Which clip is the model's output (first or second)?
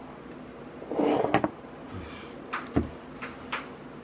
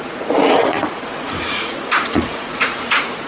second